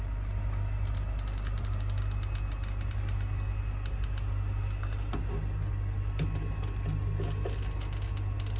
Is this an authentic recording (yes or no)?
yes